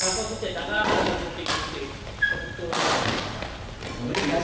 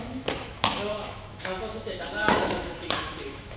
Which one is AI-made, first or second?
second